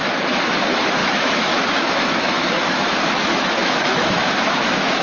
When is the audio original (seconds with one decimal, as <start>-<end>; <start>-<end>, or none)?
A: 0.0-0.6